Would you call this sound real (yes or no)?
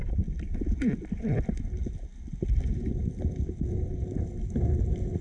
yes